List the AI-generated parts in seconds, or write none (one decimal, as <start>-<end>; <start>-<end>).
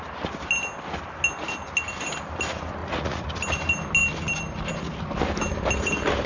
2.8-3.3